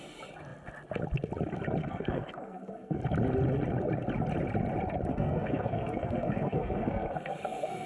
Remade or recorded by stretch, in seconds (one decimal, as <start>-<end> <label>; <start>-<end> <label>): 0.0-1.8 recorded; 1.8-3.0 remade; 3.0-5.1 recorded; 5.1-7.9 remade